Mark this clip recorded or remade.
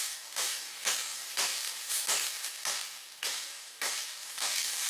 remade